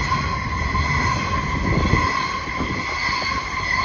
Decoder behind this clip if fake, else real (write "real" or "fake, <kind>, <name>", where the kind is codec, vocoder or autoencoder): real